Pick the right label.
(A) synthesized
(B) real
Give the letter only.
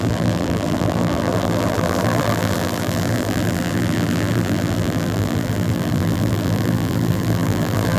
A